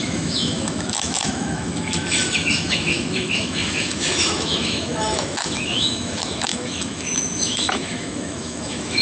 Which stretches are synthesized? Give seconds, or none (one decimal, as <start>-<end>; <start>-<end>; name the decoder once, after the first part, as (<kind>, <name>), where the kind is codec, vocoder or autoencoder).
0.0-9.0 (autoencoder, DAC-VAE)